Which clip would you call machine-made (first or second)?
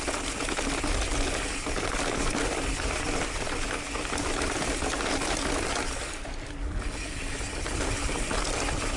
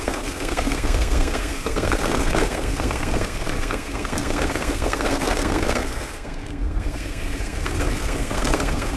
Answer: second